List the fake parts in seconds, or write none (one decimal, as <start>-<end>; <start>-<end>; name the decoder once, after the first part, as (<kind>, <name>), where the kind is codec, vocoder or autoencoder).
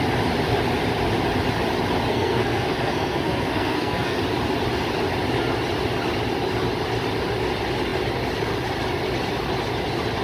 2.1-4.2 (codec, SNAC)